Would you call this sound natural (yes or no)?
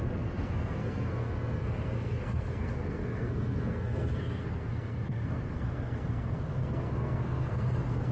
no